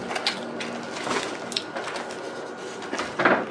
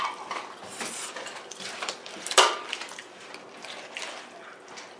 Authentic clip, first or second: first